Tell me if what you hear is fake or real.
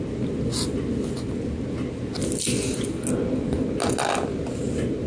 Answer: real